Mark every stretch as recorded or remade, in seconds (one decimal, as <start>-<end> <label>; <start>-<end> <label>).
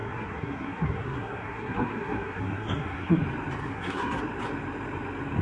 0.0-3.2 remade; 3.2-3.6 recorded; 3.6-4.2 remade; 4.2-5.4 recorded